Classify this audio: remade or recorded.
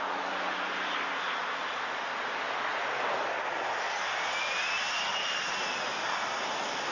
recorded